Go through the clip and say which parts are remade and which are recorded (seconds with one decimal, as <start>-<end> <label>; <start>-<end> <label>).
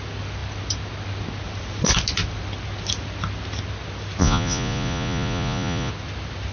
0.0-4.2 recorded; 4.2-5.9 remade; 5.9-6.5 recorded